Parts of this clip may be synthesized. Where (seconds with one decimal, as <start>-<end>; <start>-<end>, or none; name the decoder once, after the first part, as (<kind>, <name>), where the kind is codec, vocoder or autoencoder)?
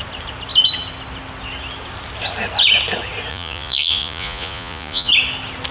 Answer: 3.3-5.1 (vocoder, Vocos)